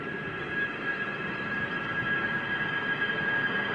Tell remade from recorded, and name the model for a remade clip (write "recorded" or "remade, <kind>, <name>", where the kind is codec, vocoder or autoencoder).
recorded